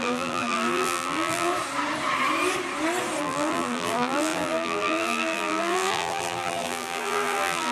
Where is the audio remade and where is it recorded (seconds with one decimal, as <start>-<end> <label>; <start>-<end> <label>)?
0.0-1.5 remade; 1.5-3.2 recorded; 3.2-7.7 remade